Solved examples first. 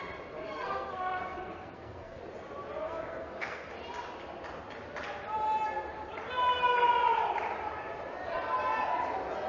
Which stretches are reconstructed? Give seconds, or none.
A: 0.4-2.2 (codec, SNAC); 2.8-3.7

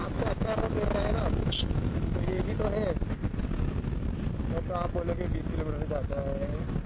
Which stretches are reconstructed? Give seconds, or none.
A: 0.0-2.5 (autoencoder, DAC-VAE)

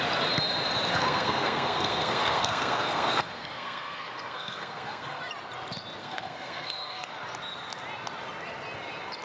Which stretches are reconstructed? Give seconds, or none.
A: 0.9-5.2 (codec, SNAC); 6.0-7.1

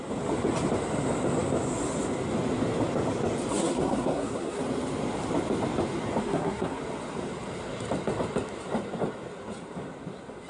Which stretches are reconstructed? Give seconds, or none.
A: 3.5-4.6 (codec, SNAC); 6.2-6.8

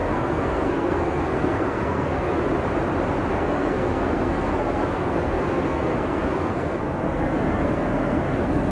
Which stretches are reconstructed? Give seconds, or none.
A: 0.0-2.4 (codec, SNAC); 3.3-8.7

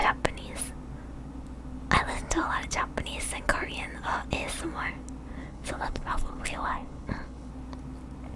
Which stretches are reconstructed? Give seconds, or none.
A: 5.4-7.5 (codec, HILCodec)